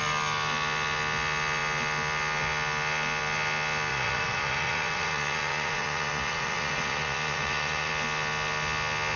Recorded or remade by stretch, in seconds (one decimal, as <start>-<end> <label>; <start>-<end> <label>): 0.0-3.9 recorded; 3.9-7.9 remade; 7.9-9.2 recorded

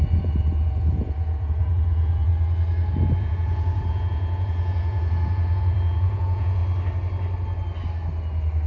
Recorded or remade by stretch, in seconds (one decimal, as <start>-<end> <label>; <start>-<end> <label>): 0.0-2.3 remade; 2.3-3.2 recorded; 3.2-6.6 remade; 6.6-8.7 recorded